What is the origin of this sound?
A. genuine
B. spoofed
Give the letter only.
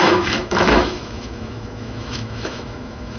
B